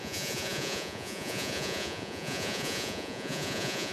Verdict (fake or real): fake